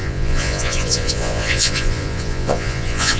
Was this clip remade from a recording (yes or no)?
yes